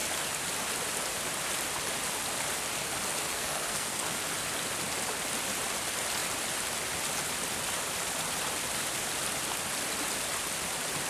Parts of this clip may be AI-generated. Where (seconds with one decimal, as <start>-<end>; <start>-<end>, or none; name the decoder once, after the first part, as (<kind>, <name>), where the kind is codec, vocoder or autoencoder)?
3.3-4.2 (codec, SNAC)